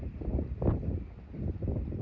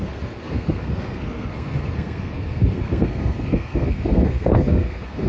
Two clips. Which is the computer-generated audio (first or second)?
second